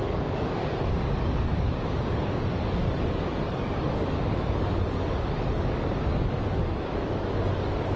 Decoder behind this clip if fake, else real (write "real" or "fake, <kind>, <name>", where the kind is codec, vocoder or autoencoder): fake, codec, DAC